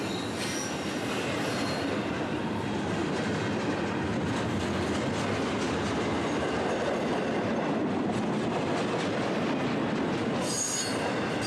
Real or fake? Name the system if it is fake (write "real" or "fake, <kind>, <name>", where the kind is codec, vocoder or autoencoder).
real